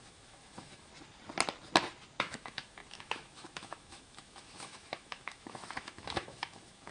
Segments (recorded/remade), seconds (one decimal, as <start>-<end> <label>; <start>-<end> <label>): 0.0-0.9 remade; 0.9-2.2 recorded; 2.2-6.9 remade